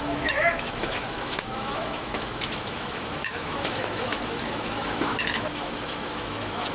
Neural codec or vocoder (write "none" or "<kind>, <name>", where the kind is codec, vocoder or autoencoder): autoencoder, DAC-VAE